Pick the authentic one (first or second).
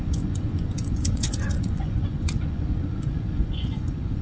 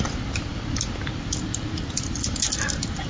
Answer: second